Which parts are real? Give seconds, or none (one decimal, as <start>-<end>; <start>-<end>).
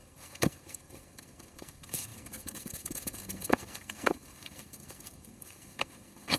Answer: none